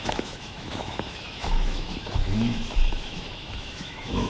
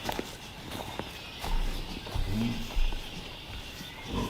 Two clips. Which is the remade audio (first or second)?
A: first